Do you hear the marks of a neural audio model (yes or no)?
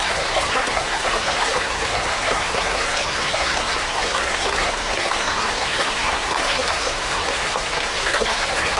yes